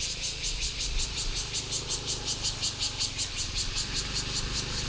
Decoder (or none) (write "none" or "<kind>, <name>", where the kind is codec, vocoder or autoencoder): none